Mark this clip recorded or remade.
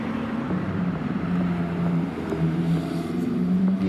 remade